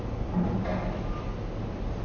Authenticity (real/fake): real